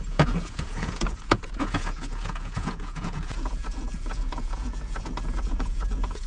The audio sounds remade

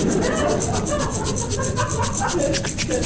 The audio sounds recorded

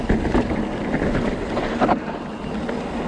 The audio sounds recorded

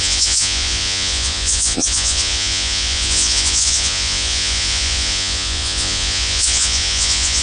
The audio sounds remade